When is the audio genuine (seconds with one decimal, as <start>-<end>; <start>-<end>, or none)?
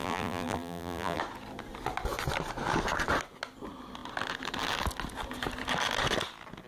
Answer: 1.2-6.7